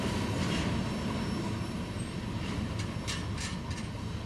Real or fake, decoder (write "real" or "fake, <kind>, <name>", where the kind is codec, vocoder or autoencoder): real